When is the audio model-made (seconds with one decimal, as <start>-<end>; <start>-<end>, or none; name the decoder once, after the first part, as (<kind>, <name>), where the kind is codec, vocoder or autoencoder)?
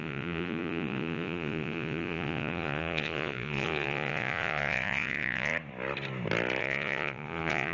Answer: 0.0-5.5 (vocoder, Vocos); 6.6-7.7